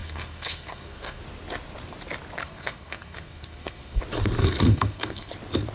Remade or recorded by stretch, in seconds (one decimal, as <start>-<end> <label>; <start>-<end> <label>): 0.0-1.2 remade; 1.2-2.4 recorded; 2.4-4.0 remade; 4.0-4.4 recorded; 4.4-5.3 remade; 5.3-5.7 recorded